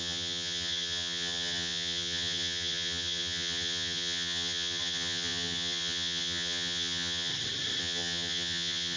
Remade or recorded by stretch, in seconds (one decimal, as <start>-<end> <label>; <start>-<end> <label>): 0.0-7.3 remade; 7.3-7.8 recorded; 7.8-9.0 remade